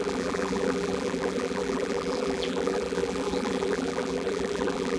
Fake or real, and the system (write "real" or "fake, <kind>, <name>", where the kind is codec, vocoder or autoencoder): fake, vocoder, BigVGAN v2